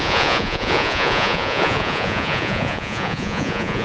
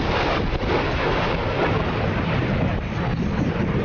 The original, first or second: second